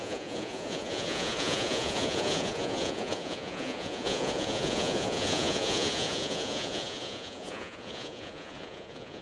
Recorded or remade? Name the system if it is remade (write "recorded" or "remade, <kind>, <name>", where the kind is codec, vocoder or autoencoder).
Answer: remade, vocoder, Vocos